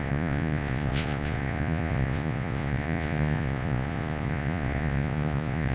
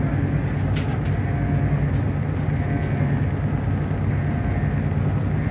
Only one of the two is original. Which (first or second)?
second